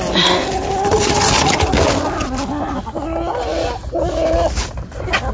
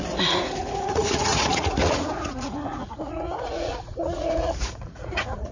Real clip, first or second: first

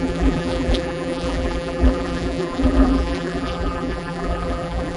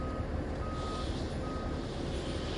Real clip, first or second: second